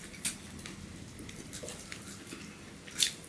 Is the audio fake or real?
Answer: real